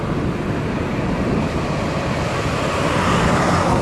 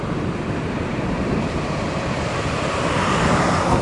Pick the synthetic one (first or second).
second